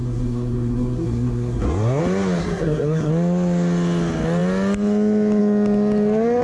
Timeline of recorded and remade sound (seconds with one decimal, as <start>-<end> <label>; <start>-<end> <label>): 0.0-2.0 remade; 2.0-2.4 recorded; 2.4-3.1 remade; 3.1-6.4 recorded